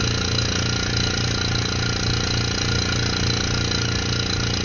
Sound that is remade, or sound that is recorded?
recorded